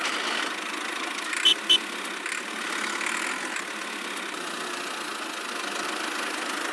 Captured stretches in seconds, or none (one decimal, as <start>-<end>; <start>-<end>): 0.0-6.7